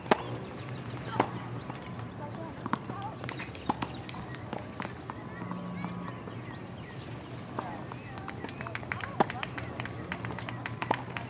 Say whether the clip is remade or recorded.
recorded